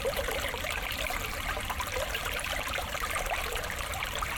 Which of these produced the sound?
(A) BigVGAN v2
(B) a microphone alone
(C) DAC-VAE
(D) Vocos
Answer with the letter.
A